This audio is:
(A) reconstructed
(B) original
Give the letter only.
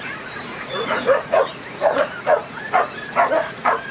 A